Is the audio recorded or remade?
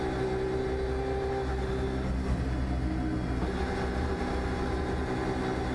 recorded